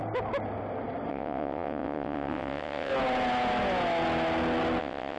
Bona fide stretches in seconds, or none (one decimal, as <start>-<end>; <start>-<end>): 0.0-1.1; 2.9-4.8